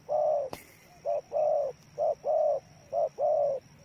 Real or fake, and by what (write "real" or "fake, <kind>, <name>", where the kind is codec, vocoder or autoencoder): real